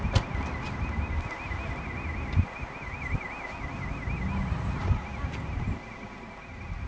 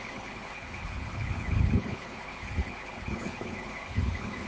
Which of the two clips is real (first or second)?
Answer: first